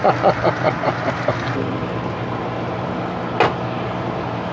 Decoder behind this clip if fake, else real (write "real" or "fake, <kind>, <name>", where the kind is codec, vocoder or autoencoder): real